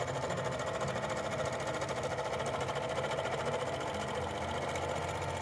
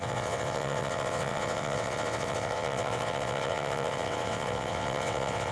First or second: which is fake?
second